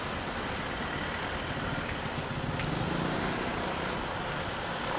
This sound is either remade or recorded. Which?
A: recorded